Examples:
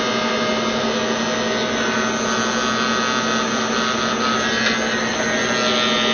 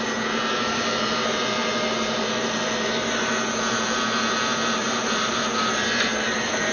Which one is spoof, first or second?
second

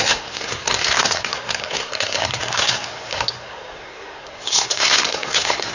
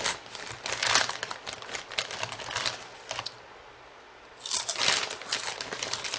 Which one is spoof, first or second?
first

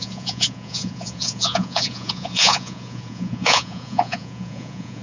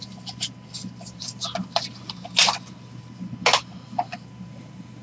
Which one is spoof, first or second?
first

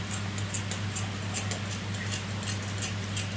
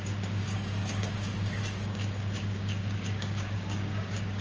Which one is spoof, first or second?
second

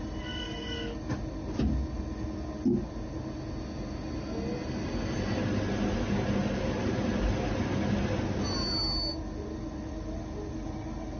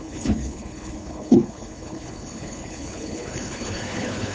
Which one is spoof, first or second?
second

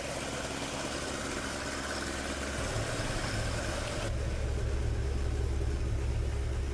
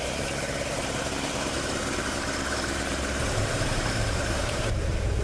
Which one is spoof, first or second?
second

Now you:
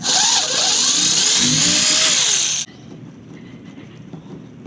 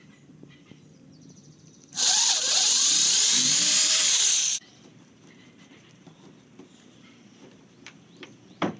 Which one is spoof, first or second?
second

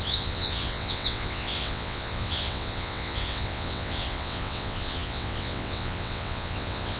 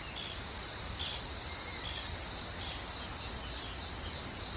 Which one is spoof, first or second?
first